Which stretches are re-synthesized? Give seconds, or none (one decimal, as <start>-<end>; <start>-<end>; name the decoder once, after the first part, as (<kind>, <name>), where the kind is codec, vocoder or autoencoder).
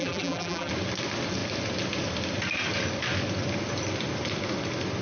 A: 0.0-0.7 (vocoder, BigVGAN v2)